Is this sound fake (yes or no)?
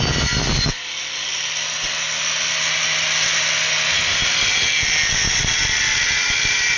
no